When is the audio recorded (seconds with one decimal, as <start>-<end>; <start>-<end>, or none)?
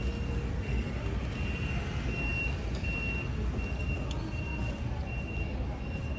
0.0-0.5; 1.2-6.2